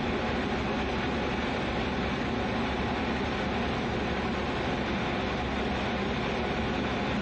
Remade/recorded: recorded